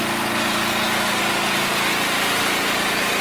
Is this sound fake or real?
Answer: real